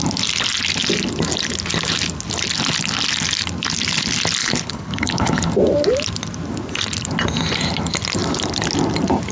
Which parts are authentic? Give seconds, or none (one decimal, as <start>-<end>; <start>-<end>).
0.0-4.4; 5.5-9.3